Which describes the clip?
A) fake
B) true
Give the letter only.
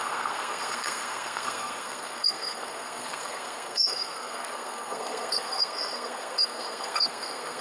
A